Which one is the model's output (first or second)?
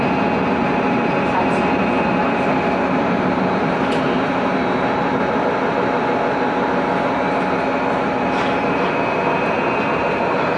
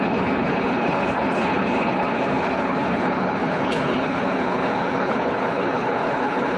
second